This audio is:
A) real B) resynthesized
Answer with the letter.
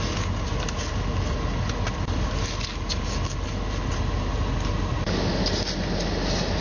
A